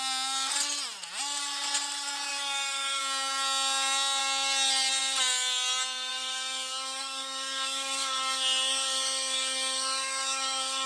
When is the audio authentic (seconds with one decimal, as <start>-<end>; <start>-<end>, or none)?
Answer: 0.0-2.3; 3.0-6.1